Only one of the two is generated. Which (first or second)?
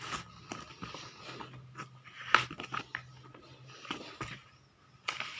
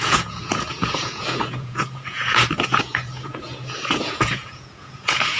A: second